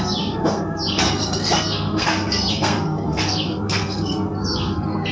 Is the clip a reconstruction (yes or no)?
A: yes